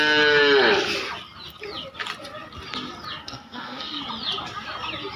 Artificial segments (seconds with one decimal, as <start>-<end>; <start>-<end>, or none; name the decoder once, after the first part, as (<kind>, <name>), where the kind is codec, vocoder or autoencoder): 3.2-4.0 (codec, SNAC)

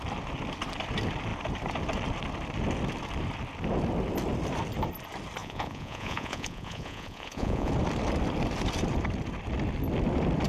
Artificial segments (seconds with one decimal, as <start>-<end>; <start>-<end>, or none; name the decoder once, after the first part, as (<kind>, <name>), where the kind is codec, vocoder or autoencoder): 5.4-7.7 (vocoder, Vocos)